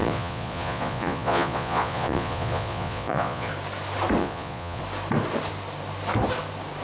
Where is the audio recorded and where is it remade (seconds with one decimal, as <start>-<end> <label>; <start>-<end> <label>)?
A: 0.0-3.5 remade; 3.5-4.2 recorded; 4.2-4.8 remade; 4.8-6.8 recorded

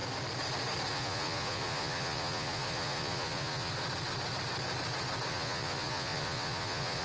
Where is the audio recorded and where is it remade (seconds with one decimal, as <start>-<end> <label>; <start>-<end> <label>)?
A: 0.0-0.9 recorded; 0.9-3.7 remade; 3.7-5.3 recorded; 5.3-7.0 remade